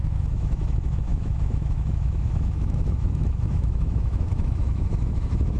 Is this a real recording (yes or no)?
no